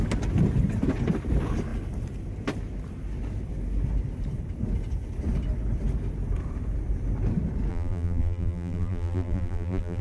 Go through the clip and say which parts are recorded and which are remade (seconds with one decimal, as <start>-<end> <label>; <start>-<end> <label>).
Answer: 0.0-7.7 recorded; 7.7-10.0 remade